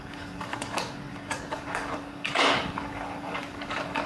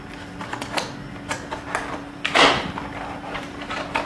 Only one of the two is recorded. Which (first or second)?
second